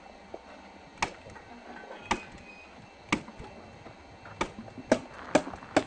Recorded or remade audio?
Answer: recorded